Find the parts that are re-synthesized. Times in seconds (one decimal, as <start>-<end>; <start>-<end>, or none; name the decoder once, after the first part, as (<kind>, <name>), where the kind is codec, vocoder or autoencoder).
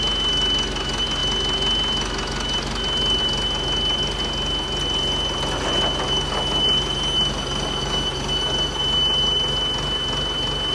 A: none